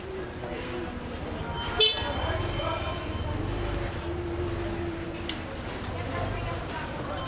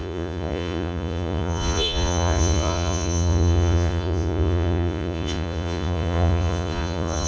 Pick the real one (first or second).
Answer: first